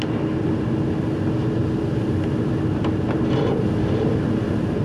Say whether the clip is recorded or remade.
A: recorded